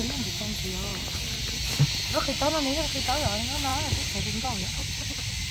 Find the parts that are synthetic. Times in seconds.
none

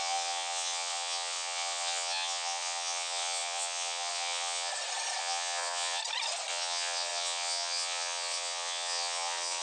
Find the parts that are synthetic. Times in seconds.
0.0-4.7 (vocoder, WaveNeXt); 5.2-6.0; 6.5-9.6